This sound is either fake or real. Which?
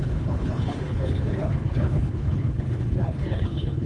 fake